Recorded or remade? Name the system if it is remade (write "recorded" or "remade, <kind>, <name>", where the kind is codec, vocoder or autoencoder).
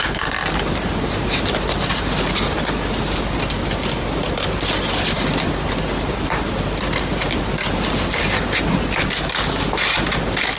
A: recorded